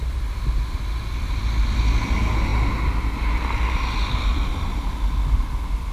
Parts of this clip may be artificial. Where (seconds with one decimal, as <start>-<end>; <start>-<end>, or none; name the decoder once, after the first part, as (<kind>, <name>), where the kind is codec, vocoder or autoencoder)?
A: none